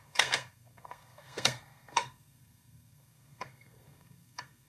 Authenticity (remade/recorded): remade